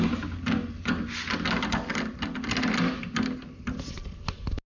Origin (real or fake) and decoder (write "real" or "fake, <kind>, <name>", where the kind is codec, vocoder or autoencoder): real